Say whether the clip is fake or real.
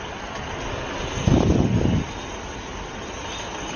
real